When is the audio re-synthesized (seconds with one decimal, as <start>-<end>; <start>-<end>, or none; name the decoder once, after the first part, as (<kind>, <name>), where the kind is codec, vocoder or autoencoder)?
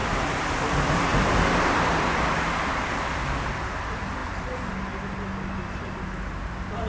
none